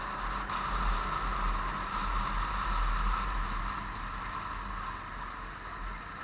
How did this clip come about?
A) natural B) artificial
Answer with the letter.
A